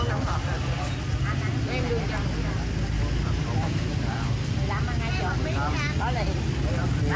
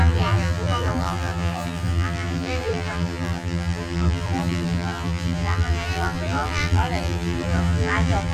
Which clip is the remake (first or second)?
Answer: second